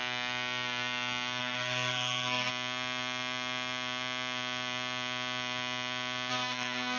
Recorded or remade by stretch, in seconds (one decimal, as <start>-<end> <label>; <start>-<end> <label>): 0.0-1.4 recorded; 1.4-2.5 remade; 2.5-6.3 recorded; 6.3-7.0 remade